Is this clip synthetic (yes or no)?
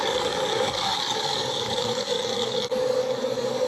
yes